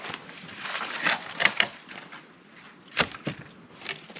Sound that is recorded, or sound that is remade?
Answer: recorded